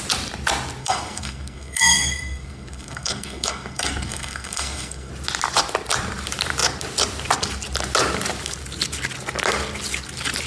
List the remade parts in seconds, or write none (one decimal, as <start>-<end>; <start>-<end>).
0.8-5.1